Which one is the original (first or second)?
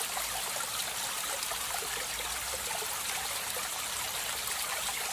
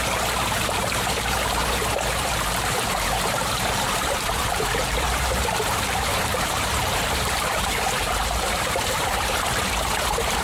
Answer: first